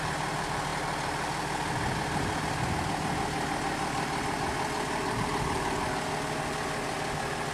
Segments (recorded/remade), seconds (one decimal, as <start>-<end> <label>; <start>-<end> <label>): 0.0-7.5 recorded